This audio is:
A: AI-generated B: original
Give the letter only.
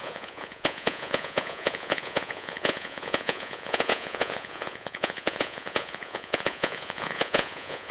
A